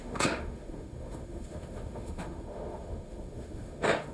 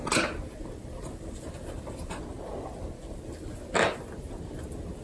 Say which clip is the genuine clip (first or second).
second